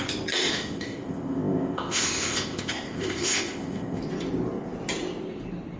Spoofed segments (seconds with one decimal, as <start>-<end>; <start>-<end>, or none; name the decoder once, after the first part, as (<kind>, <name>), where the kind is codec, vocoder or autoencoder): 0.5-4.0 (codec, ZipCodec)